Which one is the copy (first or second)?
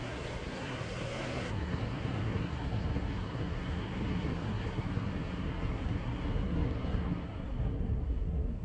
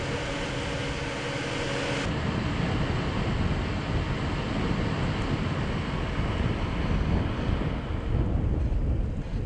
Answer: first